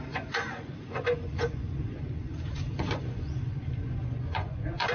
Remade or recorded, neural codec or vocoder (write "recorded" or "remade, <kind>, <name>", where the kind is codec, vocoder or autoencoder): remade, vocoder, Vocos